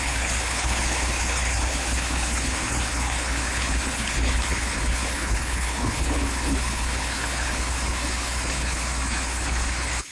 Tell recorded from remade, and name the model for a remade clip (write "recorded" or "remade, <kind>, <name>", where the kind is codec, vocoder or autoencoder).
remade, codec, HILCodec